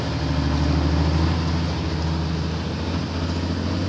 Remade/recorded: recorded